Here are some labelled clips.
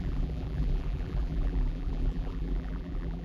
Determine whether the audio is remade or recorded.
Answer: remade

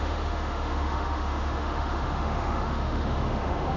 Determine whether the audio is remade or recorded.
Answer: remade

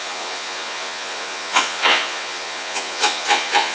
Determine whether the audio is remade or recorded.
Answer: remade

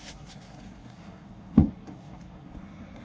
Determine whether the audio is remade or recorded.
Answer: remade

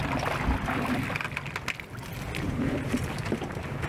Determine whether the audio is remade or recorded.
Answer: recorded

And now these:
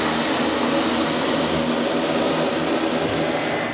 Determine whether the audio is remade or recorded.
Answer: recorded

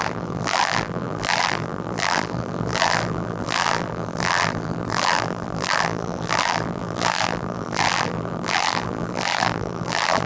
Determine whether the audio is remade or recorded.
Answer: remade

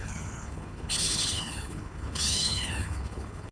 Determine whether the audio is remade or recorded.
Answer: remade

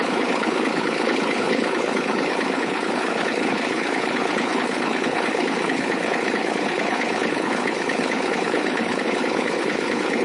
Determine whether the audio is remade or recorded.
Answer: remade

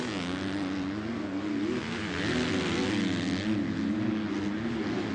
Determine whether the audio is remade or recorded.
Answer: recorded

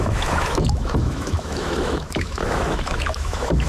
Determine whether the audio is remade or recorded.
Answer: remade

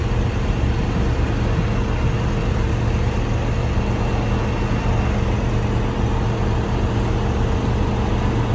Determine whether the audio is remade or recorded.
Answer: recorded